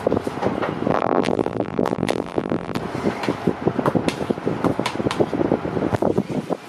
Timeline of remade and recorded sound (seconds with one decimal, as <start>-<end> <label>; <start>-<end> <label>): 0.0-0.9 recorded; 0.9-2.8 remade; 2.8-6.7 recorded